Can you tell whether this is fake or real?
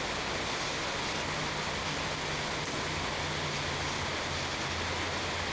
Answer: real